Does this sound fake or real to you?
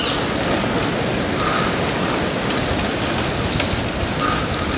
real